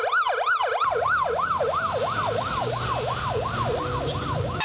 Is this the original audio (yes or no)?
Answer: yes